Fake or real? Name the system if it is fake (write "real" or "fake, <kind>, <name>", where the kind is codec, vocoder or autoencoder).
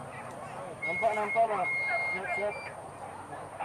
real